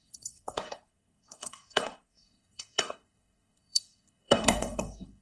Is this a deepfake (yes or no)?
yes